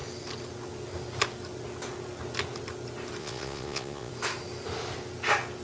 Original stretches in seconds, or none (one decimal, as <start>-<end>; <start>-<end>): 0.0-3.2; 4.1-5.6